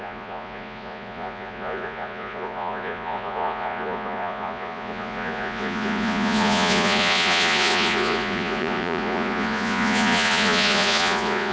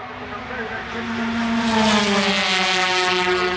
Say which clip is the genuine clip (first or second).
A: second